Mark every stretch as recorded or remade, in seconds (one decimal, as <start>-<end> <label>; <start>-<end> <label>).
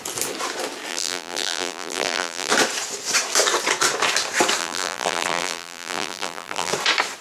0.0-0.9 recorded; 0.9-2.5 remade; 2.5-4.6 recorded; 4.6-6.7 remade; 6.7-7.2 recorded